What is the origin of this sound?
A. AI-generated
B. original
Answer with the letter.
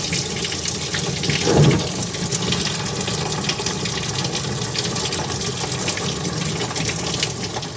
B